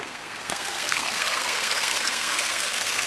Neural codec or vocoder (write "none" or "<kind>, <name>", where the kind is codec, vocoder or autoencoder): codec, SNAC